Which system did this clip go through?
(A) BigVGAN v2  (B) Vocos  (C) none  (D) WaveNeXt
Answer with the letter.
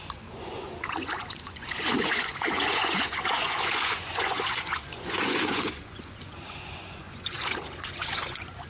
B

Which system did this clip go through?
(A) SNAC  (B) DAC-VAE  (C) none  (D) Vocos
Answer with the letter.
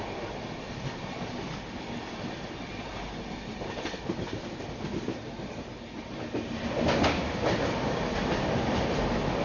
C